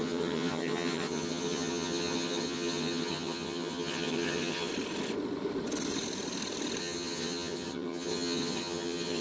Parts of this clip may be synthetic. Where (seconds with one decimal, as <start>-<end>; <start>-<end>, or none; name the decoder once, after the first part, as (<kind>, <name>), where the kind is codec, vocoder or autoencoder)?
0.0-4.7 (vocoder, HiFi-GAN); 6.8-9.2